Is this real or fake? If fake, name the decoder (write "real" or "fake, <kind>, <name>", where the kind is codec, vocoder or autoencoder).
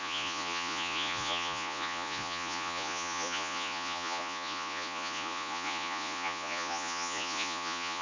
fake, vocoder, Vocos